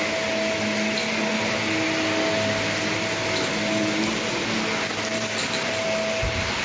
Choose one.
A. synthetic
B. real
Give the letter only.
B